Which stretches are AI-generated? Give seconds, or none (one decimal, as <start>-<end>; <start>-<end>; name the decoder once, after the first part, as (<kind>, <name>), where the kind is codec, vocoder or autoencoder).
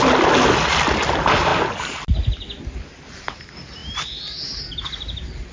none